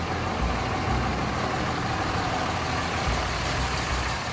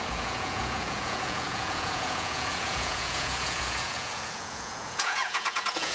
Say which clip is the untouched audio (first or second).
first